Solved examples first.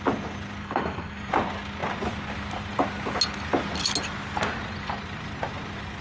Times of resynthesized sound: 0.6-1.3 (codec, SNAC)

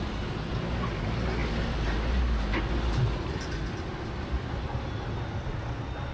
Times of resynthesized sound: none

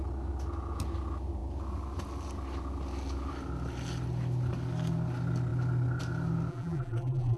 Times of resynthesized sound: 6.5-7.4 (vocoder, BigVGAN v2)